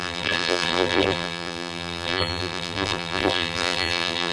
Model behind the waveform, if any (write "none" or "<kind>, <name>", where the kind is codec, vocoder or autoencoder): vocoder, BigVGAN v2